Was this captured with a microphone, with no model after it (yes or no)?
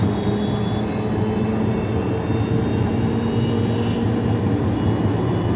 yes